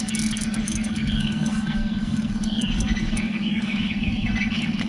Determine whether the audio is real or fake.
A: fake